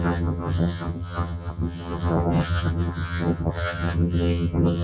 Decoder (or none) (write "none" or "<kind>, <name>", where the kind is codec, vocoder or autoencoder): vocoder, HiFi-GAN